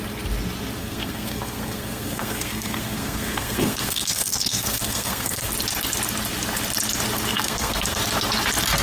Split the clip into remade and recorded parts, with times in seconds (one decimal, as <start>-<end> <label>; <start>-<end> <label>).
0.0-0.8 recorded; 0.8-5.5 remade; 5.5-7.3 recorded; 7.3-8.0 remade; 8.0-8.8 recorded